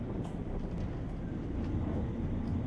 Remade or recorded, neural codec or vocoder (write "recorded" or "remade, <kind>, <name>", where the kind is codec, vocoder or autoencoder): recorded